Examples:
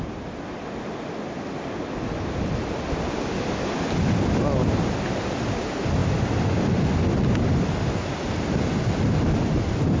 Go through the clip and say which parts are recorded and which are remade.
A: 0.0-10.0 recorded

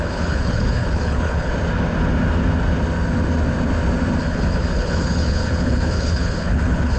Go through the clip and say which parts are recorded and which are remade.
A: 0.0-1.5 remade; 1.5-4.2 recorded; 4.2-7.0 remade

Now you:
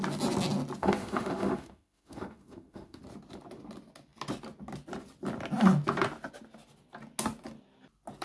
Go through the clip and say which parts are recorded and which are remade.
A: 0.0-0.8 recorded; 0.8-3.0 remade; 3.0-8.2 recorded

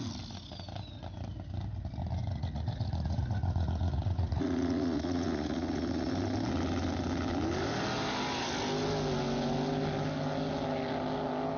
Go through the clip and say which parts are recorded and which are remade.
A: 0.0-2.2 recorded; 2.2-6.1 remade; 6.1-11.6 recorded

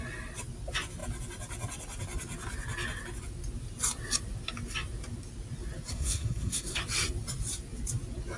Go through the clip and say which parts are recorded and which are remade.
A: 0.0-5.9 recorded; 5.9-6.8 remade; 6.8-8.4 recorded